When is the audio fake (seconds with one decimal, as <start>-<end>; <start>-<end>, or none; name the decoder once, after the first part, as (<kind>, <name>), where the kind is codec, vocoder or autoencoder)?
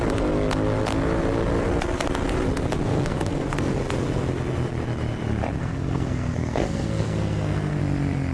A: 2.9-3.7 (codec, SNAC); 5.6-7.8